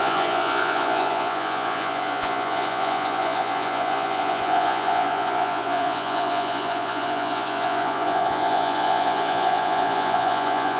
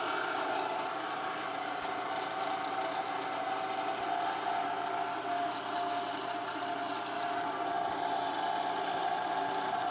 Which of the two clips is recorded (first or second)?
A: second